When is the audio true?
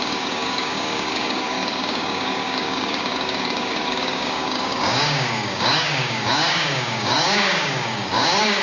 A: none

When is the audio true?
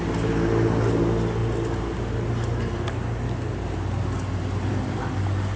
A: 0.0-5.6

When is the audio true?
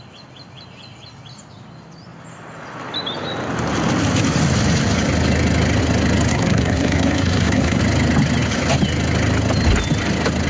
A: 0.0-6.3; 7.8-10.5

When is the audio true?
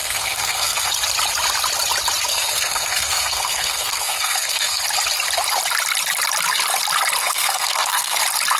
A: 0.9-2.3; 4.8-7.2; 8.2-8.6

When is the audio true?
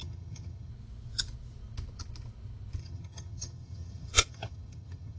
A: 0.7-2.8